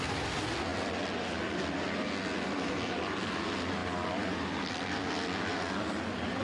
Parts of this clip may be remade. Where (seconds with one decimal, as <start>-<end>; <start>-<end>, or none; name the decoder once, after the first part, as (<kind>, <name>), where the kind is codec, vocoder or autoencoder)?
none